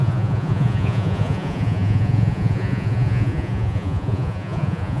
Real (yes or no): no